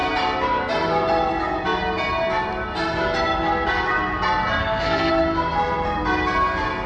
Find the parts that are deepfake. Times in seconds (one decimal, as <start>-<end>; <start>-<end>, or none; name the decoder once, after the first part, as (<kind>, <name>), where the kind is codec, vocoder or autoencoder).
4.6-5.1 (codec, SNAC)